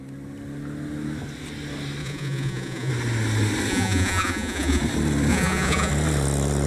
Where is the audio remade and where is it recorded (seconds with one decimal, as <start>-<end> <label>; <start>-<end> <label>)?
0.0-2.0 recorded; 2.0-2.9 remade; 2.9-3.7 recorded; 3.7-4.8 remade; 4.8-5.3 recorded; 5.3-5.9 remade; 5.9-6.7 recorded